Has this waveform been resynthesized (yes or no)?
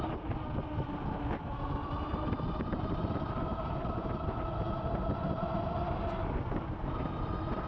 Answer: no